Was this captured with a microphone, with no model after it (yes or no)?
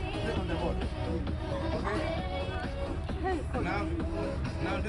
yes